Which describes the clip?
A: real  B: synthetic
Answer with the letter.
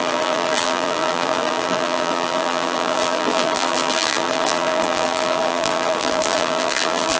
B